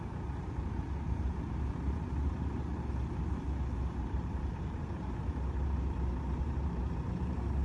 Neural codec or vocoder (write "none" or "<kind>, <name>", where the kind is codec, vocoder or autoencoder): vocoder, BigVGAN v2